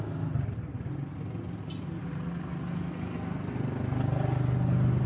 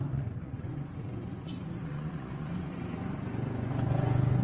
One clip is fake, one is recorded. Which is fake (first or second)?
second